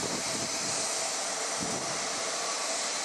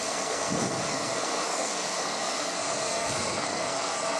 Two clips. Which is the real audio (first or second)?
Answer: first